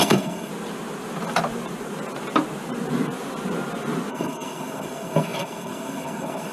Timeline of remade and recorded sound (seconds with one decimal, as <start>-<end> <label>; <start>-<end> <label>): 0.0-0.5 remade; 0.5-4.1 recorded; 4.1-6.5 remade

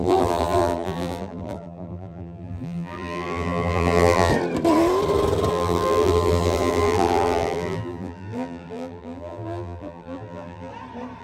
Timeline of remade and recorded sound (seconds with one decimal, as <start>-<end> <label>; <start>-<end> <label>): 0.0-4.3 remade; 4.3-5.5 recorded; 5.5-10.7 remade; 10.7-11.2 recorded

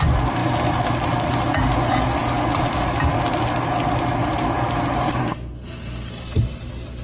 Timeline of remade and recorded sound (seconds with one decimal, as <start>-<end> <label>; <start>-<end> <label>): 0.0-5.2 recorded; 5.2-6.1 remade; 6.1-7.0 recorded

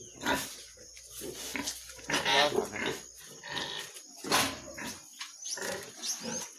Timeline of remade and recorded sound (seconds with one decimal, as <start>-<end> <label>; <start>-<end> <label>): 0.0-6.6 recorded

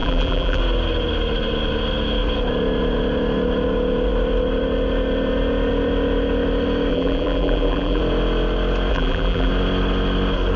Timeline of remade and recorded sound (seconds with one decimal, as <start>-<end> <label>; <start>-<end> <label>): 0.0-0.6 remade; 0.6-6.9 recorded; 6.9-8.0 remade; 8.0-8.9 recorded; 8.9-9.5 remade; 9.5-10.6 recorded

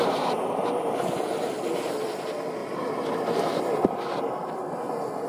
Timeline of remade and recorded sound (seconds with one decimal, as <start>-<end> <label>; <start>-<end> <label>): 0.0-5.3 recorded